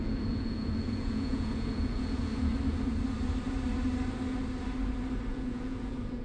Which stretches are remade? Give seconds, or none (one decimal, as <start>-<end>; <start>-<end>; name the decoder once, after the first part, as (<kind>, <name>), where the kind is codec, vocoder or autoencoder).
0.0-2.5 (vocoder, Vocos); 5.3-6.2

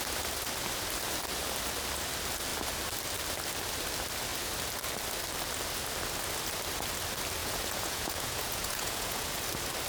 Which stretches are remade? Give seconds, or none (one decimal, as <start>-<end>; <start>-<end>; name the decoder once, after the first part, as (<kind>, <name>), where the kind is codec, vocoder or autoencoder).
7.4-9.3 (vocoder, Vocos)

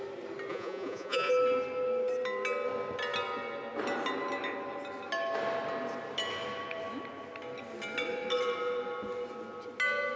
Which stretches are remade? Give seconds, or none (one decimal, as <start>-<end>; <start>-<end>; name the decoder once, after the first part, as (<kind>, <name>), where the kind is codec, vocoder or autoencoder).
0.5-1.3 (vocoder, Vocos)

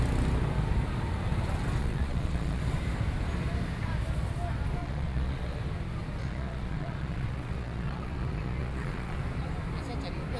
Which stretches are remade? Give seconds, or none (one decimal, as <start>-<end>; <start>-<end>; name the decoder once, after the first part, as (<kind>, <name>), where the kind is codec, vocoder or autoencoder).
1.8-2.6 (vocoder, Vocos); 4.8-5.6; 6.2-9.2

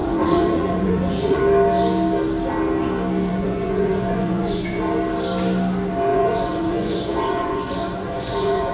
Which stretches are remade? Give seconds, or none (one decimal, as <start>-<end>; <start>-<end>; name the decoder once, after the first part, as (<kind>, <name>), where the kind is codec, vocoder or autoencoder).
0.0-1.4 (vocoder, Vocos); 3.3-4.8; 6.1-8.7

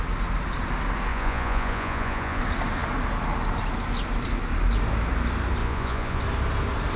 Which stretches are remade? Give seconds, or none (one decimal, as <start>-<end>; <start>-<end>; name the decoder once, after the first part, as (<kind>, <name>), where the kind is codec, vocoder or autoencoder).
1.1-2.4 (vocoder, Vocos); 5.6-6.2

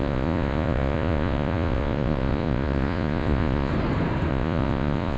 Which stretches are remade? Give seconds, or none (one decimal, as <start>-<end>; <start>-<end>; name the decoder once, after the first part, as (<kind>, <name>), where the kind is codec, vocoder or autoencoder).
0.0-3.7 (vocoder, Vocos); 4.3-5.2